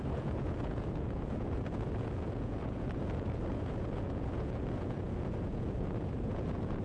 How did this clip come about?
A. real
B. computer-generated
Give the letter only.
B